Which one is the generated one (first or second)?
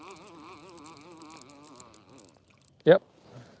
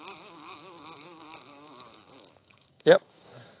second